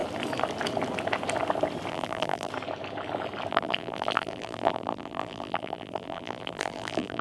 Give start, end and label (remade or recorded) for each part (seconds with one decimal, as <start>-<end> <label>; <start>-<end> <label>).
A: 0.0-1.9 recorded; 1.9-2.5 remade; 2.5-3.5 recorded; 3.5-7.2 remade